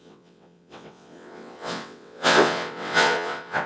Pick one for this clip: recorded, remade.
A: remade